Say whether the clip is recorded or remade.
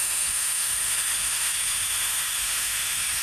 remade